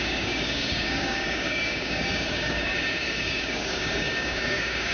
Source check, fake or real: fake